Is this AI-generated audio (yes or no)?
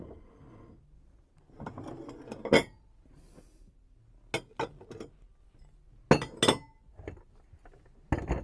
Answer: no